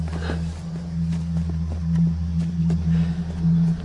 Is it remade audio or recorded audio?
recorded